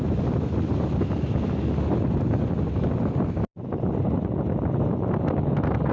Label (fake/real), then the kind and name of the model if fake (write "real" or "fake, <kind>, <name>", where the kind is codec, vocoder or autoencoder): real